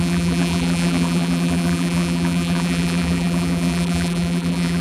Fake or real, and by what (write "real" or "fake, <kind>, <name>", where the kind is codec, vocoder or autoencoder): fake, vocoder, BigVGAN v2